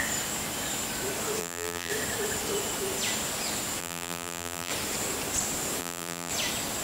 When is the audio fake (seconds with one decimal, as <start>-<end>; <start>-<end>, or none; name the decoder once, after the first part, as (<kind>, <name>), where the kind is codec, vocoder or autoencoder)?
1.4-1.9 (vocoder, BigVGAN v2); 3.8-4.7; 5.8-6.3